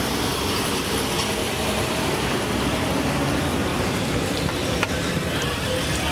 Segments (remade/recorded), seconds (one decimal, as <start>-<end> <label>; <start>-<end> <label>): 0.0-1.4 recorded; 1.4-2.4 remade; 2.4-3.7 recorded; 3.7-5.6 remade; 5.6-6.1 recorded